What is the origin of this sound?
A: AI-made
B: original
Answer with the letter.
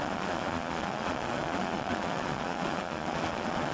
A